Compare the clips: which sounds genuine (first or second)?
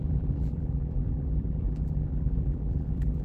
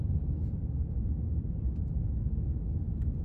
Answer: second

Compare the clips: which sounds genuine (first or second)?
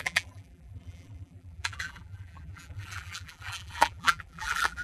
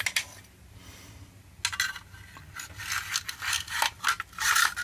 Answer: second